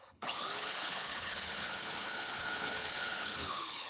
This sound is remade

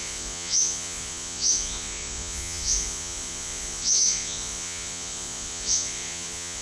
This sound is remade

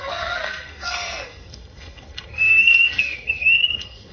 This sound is remade